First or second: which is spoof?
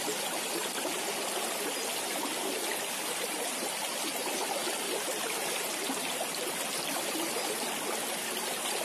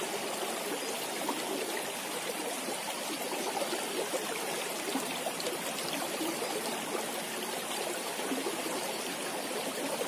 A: second